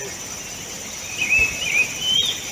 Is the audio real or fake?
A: real